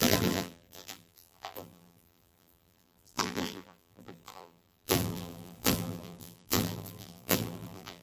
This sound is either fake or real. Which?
fake